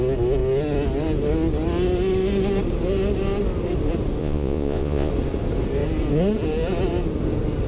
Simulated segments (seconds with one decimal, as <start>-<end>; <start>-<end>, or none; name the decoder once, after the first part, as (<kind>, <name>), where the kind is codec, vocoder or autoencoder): 4.2-5.1 (vocoder, Vocos)